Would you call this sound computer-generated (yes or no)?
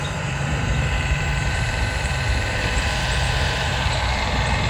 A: yes